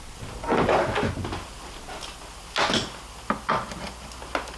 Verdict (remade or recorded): recorded